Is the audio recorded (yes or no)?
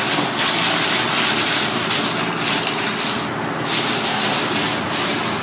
yes